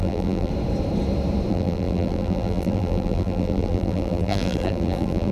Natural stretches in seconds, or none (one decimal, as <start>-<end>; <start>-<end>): 0.5-1.5